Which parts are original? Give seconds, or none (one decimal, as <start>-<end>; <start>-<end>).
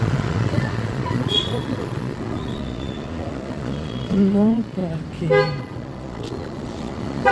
4.8-5.6